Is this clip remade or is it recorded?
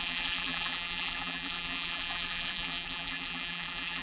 remade